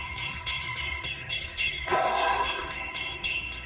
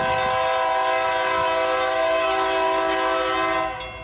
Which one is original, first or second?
second